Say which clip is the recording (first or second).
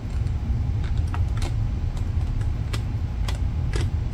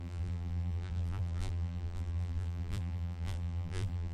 first